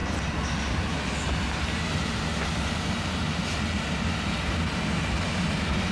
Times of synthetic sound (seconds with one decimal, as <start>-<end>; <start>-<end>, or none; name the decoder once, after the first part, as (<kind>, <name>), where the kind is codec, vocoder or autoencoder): none